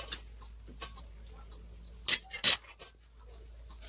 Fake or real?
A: real